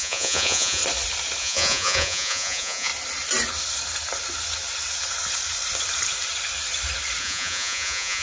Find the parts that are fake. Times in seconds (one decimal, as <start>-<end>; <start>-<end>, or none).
0.0-0.8; 1.4-2.9; 7.2-8.2